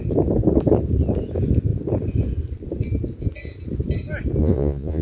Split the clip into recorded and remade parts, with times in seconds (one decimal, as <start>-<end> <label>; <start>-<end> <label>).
0.0-4.4 recorded; 4.4-5.0 remade